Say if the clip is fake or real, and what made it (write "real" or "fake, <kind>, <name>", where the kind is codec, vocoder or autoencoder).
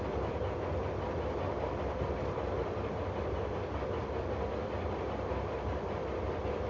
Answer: real